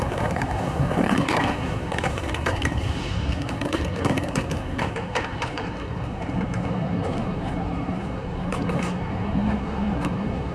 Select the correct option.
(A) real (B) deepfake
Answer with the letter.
B